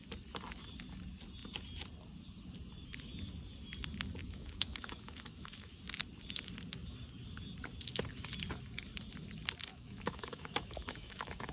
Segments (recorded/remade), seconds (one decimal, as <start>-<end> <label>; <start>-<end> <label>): 0.0-4.2 recorded; 4.2-5.8 remade; 5.8-9.7 recorded; 9.7-11.5 remade